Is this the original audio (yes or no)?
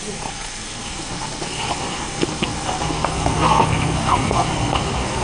no